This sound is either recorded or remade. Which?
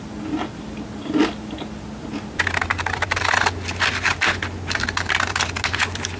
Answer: recorded